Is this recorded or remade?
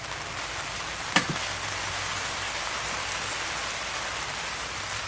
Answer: recorded